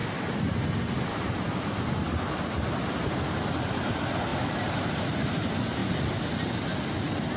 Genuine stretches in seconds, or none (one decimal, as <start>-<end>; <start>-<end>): 2.1-4.3; 5.2-5.8; 6.3-7.4